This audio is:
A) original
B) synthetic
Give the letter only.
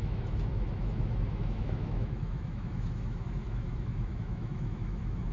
B